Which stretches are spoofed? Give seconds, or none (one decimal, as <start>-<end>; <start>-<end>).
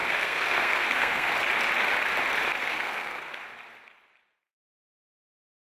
0.0-1.3; 2.6-3.4